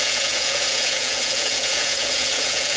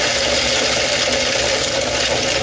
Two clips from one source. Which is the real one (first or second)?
second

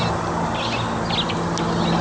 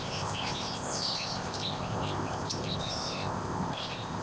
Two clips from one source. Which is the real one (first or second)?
first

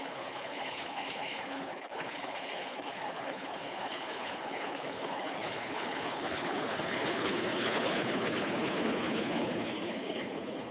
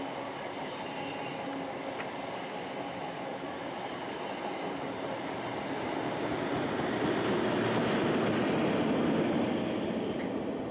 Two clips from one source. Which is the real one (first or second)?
second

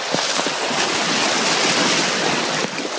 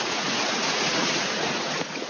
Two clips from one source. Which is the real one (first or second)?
first